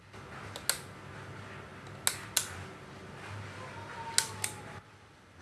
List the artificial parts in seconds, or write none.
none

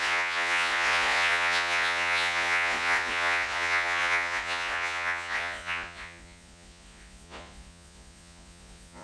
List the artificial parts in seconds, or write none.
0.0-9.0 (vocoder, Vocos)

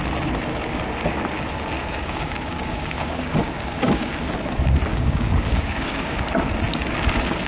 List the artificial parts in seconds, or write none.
1.8-4.1 (codec, DAC); 4.9-6.3

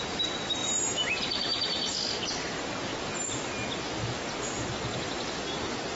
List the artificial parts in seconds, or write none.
0.6-1.9 (vocoder, BigVGAN v2)

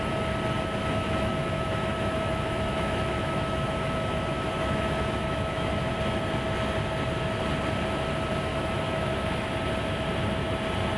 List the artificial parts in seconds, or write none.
0.8-5.9 (autoencoder, DAC-VAE); 8.5-9.5

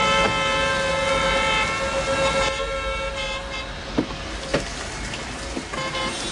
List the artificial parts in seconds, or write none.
none

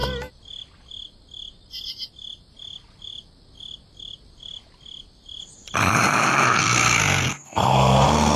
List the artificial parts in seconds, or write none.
6.6-8.4 (codec, SNAC)